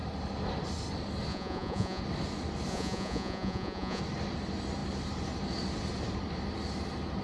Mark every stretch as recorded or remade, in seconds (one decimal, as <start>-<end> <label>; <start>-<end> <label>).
0.0-1.3 recorded; 1.3-2.0 remade; 2.0-2.7 recorded; 2.7-4.0 remade; 4.0-7.2 recorded

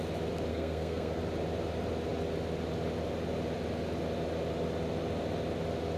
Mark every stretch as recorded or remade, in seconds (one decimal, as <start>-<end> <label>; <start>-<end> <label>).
0.0-0.5 recorded; 0.5-1.2 remade; 1.2-6.0 recorded